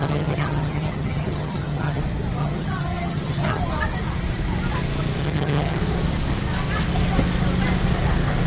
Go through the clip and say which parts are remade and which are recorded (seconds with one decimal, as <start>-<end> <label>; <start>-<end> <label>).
0.0-2.0 remade; 2.0-2.4 recorded; 2.4-3.6 remade; 3.6-5.2 recorded; 5.2-5.8 remade; 5.8-8.5 recorded